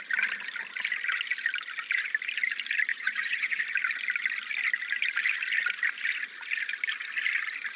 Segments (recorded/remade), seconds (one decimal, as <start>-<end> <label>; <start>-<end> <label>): 0.0-2.9 recorded; 2.9-3.6 remade; 3.6-7.8 recorded